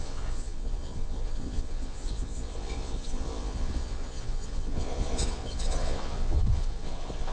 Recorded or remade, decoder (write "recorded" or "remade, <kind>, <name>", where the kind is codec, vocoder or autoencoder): remade, vocoder, Vocos